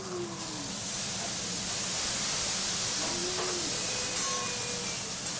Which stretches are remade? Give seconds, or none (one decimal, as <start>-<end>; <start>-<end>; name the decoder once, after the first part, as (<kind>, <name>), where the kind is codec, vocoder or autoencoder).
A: none